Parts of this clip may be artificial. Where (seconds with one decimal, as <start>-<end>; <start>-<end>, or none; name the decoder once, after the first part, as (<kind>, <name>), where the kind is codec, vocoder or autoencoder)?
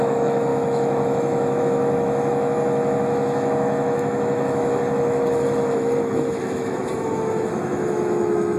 0.0-8.6 (autoencoder, DAC-VAE)